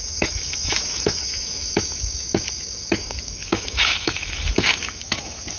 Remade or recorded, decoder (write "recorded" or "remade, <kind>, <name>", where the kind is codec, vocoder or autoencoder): remade, autoencoder, DAC-VAE